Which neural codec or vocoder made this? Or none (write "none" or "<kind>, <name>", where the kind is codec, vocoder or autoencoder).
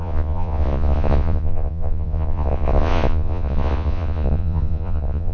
vocoder, Vocos